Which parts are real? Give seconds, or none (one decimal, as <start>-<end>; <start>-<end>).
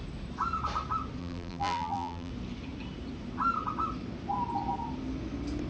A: 0.0-1.2; 2.3-5.7